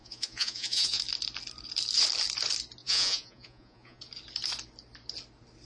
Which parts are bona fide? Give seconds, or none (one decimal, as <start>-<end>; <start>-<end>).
1.0-2.8; 4.0-5.6

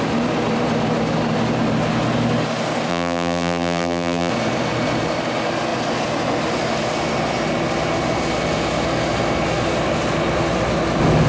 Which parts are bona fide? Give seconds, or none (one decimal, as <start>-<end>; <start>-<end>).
0.0-2.9; 4.3-11.3